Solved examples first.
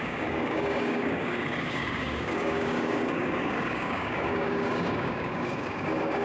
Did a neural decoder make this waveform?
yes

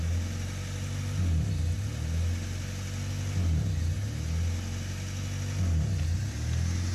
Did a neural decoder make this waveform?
no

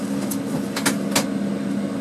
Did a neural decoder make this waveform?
no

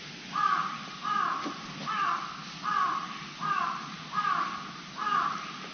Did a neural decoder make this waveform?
no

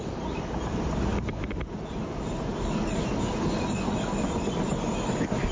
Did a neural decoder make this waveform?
no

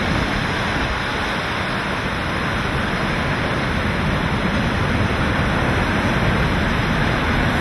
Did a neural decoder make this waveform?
no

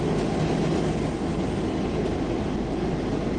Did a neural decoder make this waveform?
no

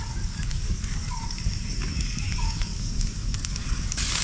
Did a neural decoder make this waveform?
yes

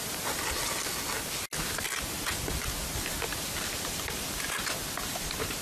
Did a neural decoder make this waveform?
no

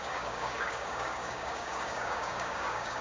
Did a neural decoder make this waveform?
yes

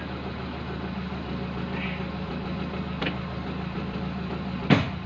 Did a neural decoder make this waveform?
no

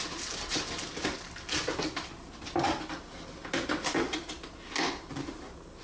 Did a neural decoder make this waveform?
no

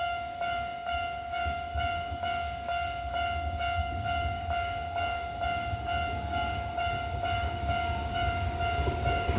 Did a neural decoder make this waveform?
yes